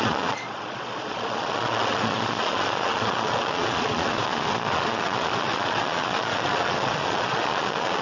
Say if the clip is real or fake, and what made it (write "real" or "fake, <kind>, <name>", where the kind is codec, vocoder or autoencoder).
fake, vocoder, Vocos